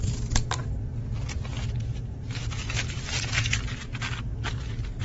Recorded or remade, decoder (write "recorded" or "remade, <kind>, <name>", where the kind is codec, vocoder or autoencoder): recorded